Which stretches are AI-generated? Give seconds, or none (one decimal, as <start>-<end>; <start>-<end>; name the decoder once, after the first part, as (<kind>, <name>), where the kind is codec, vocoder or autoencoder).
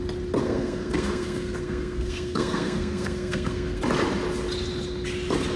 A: 0.4-3.8 (codec, SNAC)